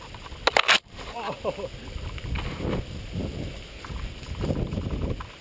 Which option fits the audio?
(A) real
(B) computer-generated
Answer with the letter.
A